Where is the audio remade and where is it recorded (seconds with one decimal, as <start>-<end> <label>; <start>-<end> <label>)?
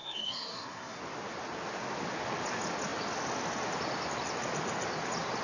0.0-1.0 remade; 1.0-5.4 recorded